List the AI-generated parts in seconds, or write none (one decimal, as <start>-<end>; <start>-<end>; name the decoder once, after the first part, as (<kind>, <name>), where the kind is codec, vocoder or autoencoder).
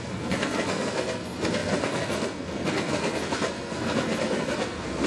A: 0.0-5.1 (codec, SNAC)